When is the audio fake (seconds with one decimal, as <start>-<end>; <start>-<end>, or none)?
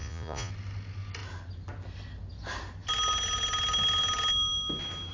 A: 0.0-0.5